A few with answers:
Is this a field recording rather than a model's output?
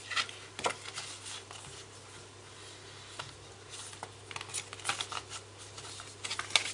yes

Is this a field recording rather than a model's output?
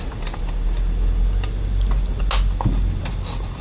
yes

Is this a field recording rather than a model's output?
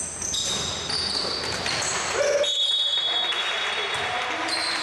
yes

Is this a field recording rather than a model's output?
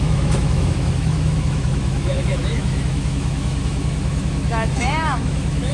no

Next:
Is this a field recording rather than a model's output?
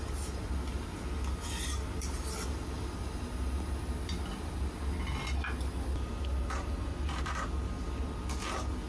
yes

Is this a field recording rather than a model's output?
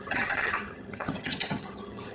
no